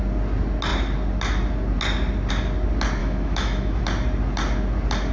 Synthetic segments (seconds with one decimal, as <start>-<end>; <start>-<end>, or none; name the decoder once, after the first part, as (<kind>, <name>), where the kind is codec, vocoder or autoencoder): 3.0-3.8 (autoencoder, DAC-VAE)